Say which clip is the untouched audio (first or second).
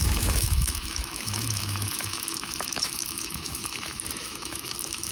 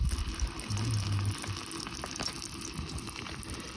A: second